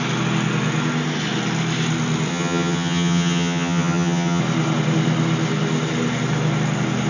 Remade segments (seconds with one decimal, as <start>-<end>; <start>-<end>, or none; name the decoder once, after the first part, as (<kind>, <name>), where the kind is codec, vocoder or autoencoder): 2.3-4.4 (vocoder, HiFi-GAN)